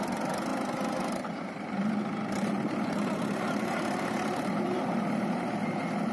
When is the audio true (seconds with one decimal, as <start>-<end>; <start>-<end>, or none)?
0.5-2.3